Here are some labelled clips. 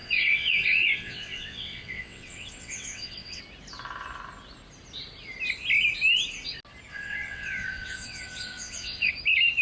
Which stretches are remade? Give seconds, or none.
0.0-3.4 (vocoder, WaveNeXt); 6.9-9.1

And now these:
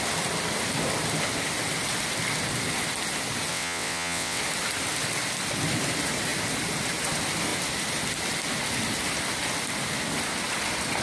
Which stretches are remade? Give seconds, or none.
3.5-4.4 (vocoder, WaveNeXt)

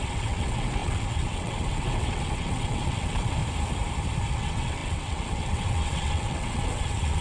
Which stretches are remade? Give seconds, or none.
0.0-3.4 (vocoder, WaveNeXt); 4.3-7.2

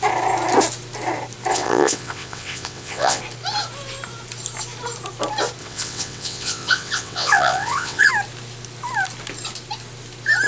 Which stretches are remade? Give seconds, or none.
1.5-3.2 (vocoder, WaveNeXt); 5.6-8.1

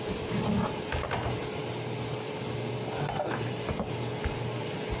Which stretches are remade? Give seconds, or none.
none

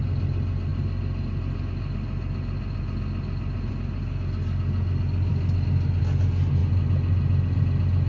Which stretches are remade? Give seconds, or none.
none